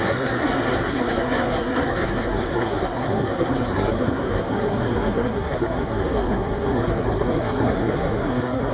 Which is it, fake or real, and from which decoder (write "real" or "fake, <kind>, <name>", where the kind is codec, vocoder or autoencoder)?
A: fake, codec, SNAC